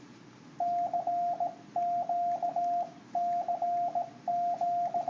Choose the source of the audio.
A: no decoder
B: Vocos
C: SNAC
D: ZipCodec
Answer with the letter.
A